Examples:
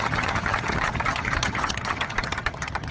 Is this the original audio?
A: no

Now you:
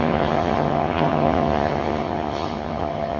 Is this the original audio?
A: no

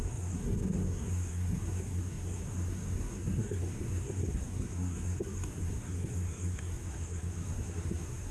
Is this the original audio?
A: no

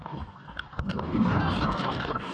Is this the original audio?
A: no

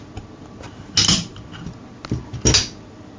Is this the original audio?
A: yes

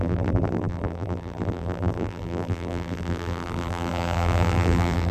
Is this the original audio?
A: no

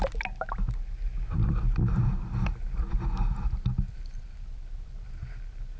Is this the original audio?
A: yes